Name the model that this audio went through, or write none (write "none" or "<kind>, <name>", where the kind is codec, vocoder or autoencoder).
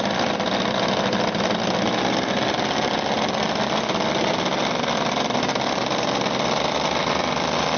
none